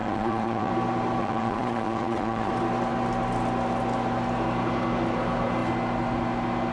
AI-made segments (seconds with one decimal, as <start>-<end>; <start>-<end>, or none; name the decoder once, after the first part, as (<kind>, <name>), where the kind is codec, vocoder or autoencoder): 0.0-0.7 (vocoder, Vocos); 1.2-2.5